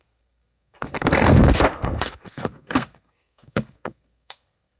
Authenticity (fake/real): fake